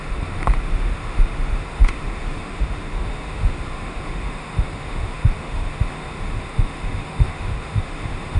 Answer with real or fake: fake